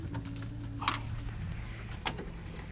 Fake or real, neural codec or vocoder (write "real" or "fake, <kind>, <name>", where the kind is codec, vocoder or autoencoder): real